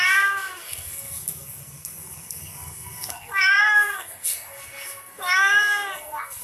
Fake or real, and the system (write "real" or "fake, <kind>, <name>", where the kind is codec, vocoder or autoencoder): fake, codec, SNAC